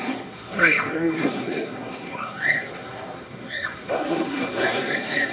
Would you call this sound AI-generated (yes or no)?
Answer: yes